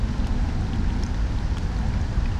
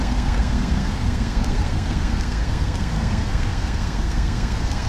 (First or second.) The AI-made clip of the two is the second